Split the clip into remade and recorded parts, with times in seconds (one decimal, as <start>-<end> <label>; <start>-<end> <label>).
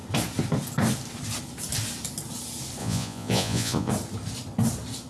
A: 0.0-2.8 recorded; 2.8-3.9 remade; 3.9-5.1 recorded